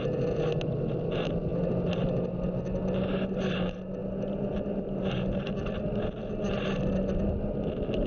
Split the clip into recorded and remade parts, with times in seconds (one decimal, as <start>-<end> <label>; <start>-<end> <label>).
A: 0.0-8.1 recorded